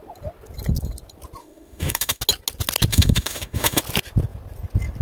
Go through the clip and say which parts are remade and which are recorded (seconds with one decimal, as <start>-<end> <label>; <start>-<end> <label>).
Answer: 0.0-1.4 recorded; 1.4-2.2 remade; 2.2-2.9 recorded; 2.9-3.8 remade; 3.8-5.0 recorded

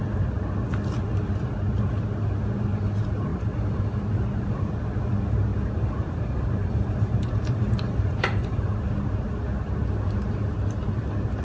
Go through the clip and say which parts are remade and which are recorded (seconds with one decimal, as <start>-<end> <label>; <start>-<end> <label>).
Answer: 0.0-3.3 recorded; 3.3-4.0 remade; 4.0-5.5 recorded; 5.5-8.8 remade; 8.8-11.4 recorded

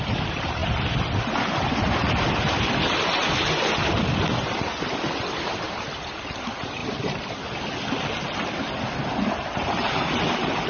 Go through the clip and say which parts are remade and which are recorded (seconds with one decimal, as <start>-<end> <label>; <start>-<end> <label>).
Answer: 0.0-0.6 remade; 0.6-4.6 recorded; 4.6-6.8 remade; 6.8-9.0 recorded; 9.0-10.7 remade

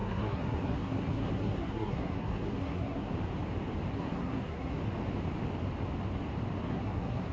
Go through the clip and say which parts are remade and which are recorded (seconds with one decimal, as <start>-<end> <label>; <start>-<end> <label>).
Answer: 0.0-3.1 remade; 3.1-3.9 recorded; 3.9-4.8 remade; 4.8-6.6 recorded; 6.6-7.3 remade